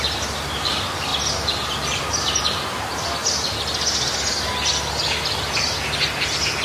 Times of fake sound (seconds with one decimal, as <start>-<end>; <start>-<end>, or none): none